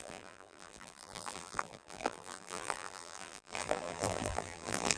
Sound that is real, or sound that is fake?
fake